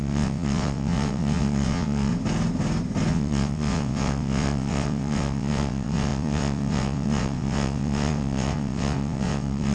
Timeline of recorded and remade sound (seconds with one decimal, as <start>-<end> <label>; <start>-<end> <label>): 0.0-2.1 remade; 2.1-3.1 recorded; 3.1-9.7 remade